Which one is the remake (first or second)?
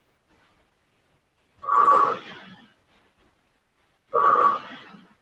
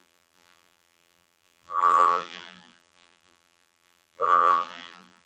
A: second